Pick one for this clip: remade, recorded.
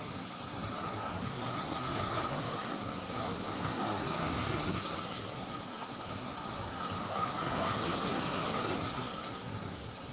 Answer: remade